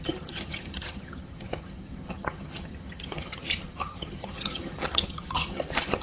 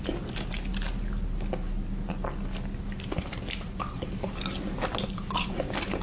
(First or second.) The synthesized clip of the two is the first